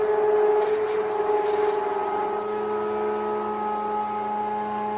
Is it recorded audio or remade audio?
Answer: recorded